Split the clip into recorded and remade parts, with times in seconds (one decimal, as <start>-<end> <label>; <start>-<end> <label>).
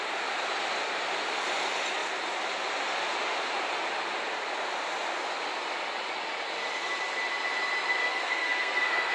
0.0-8.0 recorded; 8.0-9.1 remade